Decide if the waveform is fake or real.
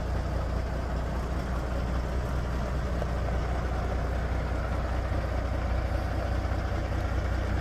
real